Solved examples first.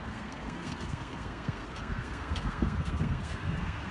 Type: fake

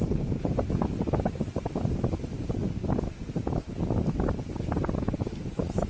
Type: real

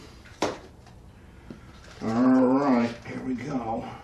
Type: fake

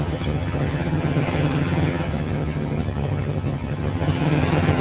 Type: fake